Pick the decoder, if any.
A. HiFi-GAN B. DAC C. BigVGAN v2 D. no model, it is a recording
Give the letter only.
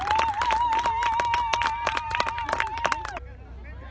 D